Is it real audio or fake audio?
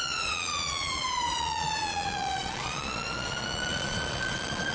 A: fake